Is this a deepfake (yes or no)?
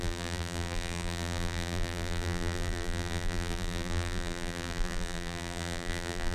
yes